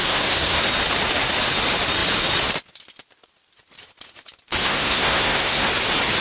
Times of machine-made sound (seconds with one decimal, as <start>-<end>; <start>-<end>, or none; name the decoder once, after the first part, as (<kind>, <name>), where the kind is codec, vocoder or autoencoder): 0.0-0.6 (codec, SNAC); 4.6-5.7